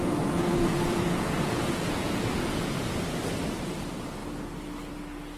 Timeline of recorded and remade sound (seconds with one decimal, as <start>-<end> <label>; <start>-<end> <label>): 0.0-3.0 remade; 3.0-5.4 recorded

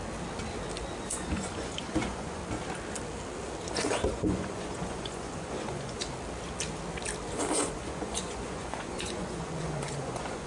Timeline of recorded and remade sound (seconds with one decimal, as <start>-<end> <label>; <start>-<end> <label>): 0.0-1.0 recorded; 1.0-2.4 remade; 2.4-4.1 recorded; 4.1-6.0 remade; 6.0-7.5 recorded; 7.5-10.5 remade